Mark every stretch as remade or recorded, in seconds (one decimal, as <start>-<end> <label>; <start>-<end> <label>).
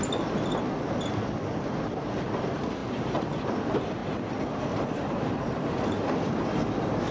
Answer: 0.0-2.8 recorded; 2.8-3.4 remade; 3.4-4.0 recorded; 4.0-6.0 remade; 6.0-7.1 recorded